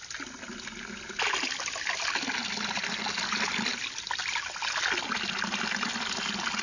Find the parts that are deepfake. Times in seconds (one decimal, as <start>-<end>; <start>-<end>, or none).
none